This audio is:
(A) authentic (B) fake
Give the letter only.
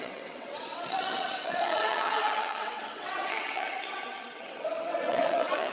B